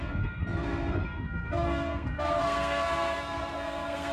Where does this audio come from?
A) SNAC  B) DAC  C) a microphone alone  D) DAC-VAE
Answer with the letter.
A